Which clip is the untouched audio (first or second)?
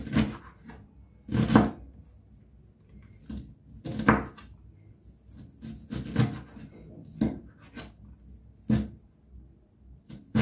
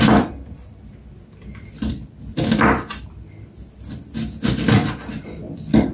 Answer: first